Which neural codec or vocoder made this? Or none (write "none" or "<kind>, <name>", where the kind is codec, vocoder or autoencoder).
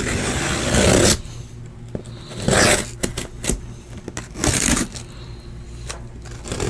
none